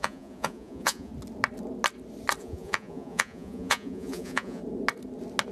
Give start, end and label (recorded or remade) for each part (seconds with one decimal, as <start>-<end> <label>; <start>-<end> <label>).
0.0-1.1 remade; 1.1-2.4 recorded; 2.4-4.6 remade; 4.6-5.5 recorded